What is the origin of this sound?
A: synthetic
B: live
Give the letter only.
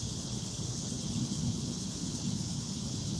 A